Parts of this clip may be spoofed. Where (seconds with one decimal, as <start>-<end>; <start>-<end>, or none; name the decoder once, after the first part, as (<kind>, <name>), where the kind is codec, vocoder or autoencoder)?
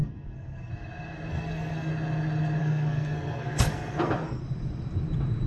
0.0-0.7 (codec, SNAC); 1.3-1.9; 2.6-4.4